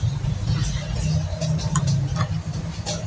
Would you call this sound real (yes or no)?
yes